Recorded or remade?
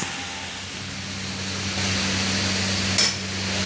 recorded